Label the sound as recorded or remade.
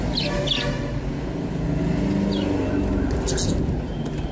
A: recorded